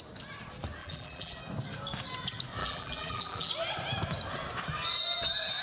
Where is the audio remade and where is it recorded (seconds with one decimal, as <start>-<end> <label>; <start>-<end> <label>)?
0.0-0.8 recorded; 0.8-1.4 remade; 1.4-2.6 recorded; 2.6-3.5 remade; 3.5-5.6 recorded